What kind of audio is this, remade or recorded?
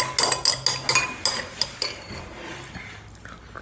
recorded